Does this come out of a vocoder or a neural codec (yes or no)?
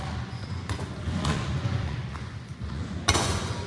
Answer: yes